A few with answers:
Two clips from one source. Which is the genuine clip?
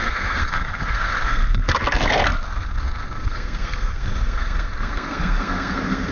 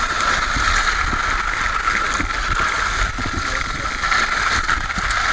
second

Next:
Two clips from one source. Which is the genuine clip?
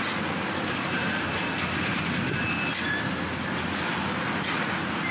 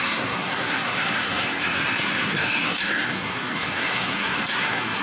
first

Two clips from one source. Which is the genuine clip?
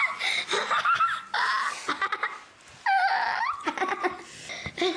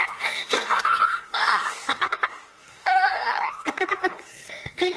first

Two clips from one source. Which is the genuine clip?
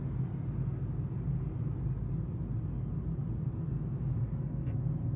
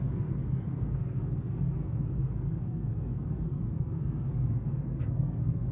first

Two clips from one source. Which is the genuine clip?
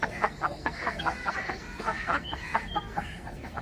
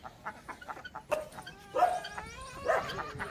second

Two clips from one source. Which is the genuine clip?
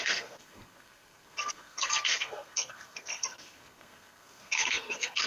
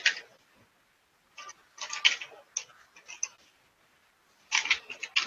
second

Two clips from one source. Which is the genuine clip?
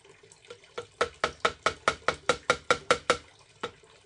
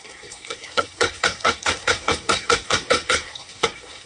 first